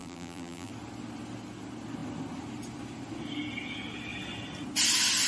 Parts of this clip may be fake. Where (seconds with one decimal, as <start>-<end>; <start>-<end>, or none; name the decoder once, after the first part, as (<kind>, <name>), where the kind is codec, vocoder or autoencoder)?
0.0-0.7 (vocoder, BigVGAN v2)